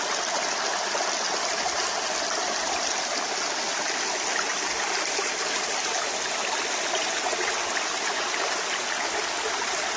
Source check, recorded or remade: recorded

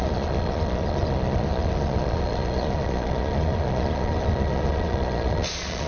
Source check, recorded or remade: remade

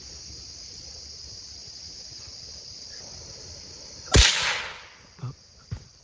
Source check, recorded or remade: recorded